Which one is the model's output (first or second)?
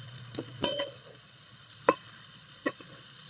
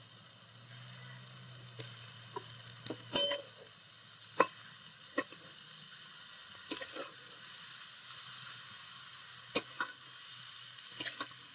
first